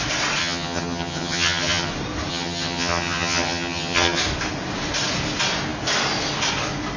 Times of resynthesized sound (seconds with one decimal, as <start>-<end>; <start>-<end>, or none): 0.4-1.9; 2.3-4.2